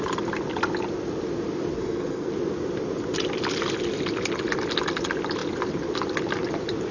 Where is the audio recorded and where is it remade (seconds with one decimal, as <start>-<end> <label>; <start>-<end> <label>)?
0.0-1.7 recorded; 1.7-2.3 remade; 2.3-6.9 recorded